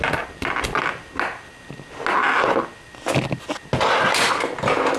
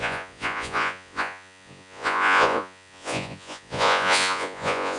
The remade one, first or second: second